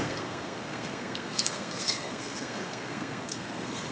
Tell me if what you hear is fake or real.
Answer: fake